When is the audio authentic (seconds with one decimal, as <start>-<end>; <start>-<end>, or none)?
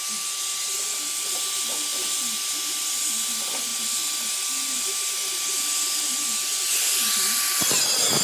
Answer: 0.0-8.2